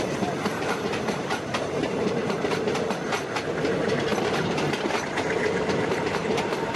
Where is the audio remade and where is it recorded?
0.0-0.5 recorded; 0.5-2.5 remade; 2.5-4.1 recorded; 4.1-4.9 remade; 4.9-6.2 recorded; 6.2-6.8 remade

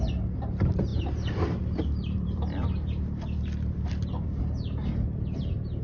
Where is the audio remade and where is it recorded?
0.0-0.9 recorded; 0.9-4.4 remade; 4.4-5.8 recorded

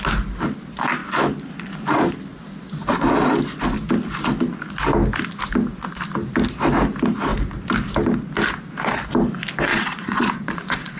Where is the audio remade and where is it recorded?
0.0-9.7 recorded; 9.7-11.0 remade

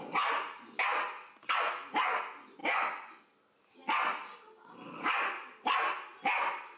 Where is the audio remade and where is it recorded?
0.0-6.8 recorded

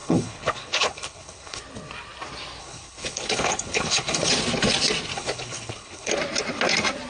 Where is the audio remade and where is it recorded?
0.0-1.6 remade; 1.6-2.6 recorded; 2.6-4.3 remade; 4.3-5.1 recorded; 5.1-6.1 remade; 6.1-7.1 recorded

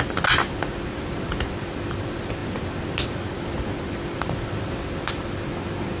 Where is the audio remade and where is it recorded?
0.0-6.0 recorded

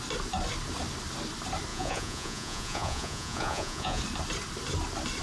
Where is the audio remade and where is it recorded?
0.0-1.7 recorded; 1.7-4.0 remade; 4.0-5.2 recorded